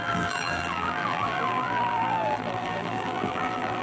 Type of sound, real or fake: fake